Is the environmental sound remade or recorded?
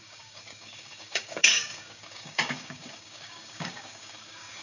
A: remade